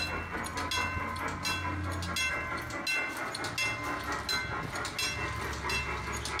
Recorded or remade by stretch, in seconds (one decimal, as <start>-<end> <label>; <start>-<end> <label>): 0.0-6.4 recorded